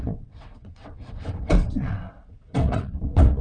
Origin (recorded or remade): remade